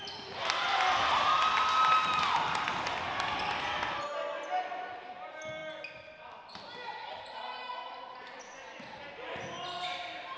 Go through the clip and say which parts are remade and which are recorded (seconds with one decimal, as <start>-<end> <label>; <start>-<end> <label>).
0.0-10.4 recorded